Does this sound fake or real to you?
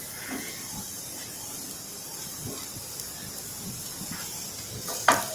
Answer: real